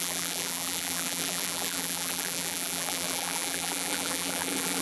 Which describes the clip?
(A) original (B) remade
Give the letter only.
B